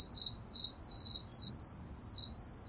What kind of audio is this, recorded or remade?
recorded